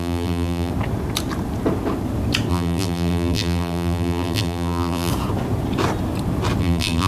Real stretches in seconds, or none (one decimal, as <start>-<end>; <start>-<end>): 0.7-2.5; 5.1-6.6